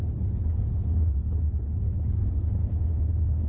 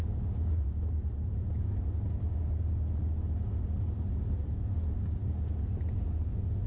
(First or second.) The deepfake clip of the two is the first